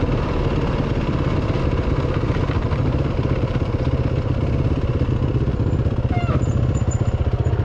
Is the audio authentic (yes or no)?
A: yes